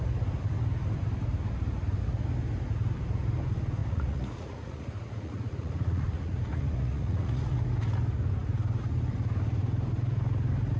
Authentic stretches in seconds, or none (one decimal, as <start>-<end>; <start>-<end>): 0.0-3.8; 7.6-10.8